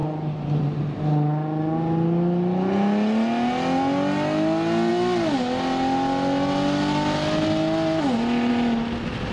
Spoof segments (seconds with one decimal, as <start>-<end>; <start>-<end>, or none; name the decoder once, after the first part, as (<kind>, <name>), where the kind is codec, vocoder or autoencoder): none